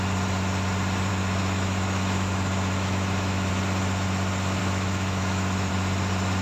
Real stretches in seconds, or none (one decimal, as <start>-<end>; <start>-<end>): 0.0-1.1; 3.5-4.6; 5.7-6.4